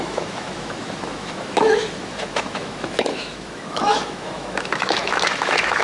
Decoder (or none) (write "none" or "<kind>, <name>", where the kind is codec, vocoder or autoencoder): autoencoder, DAC-VAE